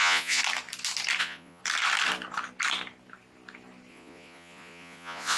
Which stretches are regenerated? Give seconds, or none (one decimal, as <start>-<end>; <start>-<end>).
0.0-0.4; 1.2-1.6; 3.9-5.4